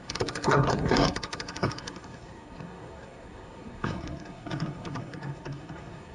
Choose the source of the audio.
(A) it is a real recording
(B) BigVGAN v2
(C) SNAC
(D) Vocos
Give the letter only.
C